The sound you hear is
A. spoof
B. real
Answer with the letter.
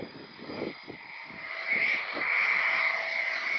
B